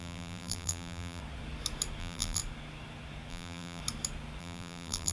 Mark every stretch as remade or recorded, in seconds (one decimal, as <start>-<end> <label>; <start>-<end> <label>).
0.0-1.2 remade; 1.2-2.0 recorded; 2.0-2.4 remade; 2.4-3.3 recorded; 3.3-3.8 remade; 3.8-4.4 recorded; 4.4-5.1 remade